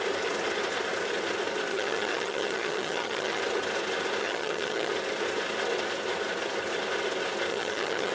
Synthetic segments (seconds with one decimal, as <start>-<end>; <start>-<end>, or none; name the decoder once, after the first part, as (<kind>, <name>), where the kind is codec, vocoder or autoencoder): 1.7-3.4 (vocoder, HiFi-GAN); 4.2-4.9; 7.5-8.1